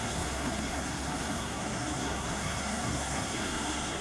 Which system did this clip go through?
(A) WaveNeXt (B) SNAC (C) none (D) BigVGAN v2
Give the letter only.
B